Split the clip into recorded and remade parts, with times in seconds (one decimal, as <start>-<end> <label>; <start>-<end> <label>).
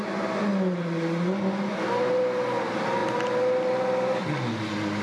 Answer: 0.0-5.0 recorded